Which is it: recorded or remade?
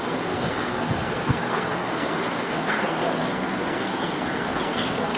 remade